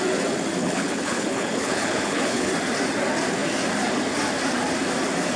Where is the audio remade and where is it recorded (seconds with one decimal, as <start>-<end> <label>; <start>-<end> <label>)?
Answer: 0.0-0.6 recorded; 0.6-2.5 remade; 2.5-5.4 recorded